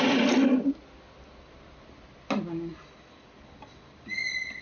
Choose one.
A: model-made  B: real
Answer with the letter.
B